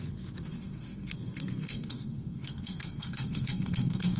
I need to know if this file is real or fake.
fake